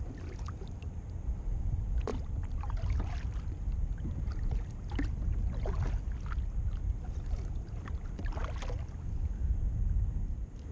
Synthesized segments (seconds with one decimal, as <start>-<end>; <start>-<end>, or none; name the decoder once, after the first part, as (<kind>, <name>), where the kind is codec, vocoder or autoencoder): none